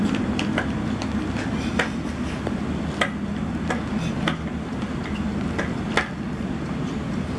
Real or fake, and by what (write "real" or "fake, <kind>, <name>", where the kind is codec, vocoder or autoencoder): real